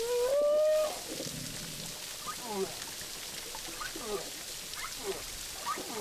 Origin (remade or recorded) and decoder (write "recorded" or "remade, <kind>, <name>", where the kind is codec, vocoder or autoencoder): recorded